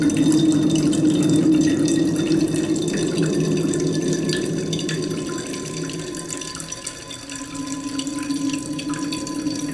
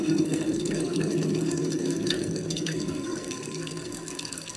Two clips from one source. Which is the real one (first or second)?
first